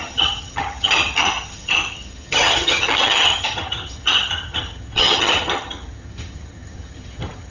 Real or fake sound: fake